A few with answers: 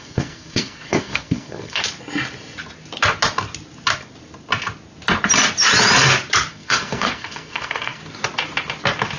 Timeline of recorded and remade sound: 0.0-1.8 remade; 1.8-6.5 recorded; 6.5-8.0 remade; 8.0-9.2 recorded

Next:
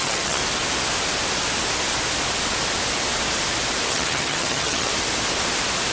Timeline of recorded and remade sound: 0.0-0.4 remade; 0.4-3.9 recorded; 3.9-4.9 remade; 4.9-5.9 recorded

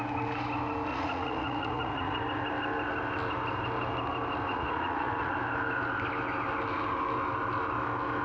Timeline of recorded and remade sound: 0.0-0.9 recorded; 0.9-2.2 remade; 2.2-4.5 recorded; 4.5-5.3 remade; 5.3-8.2 recorded

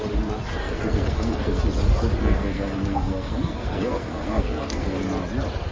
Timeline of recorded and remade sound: 0.0-0.6 recorded; 0.6-1.6 remade; 1.6-2.2 recorded; 2.2-5.0 remade; 5.0-5.7 recorded